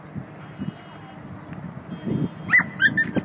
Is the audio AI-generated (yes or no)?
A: no